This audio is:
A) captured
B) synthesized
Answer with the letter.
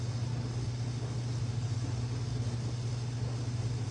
A